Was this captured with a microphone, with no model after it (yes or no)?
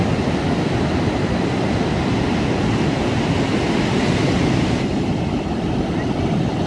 yes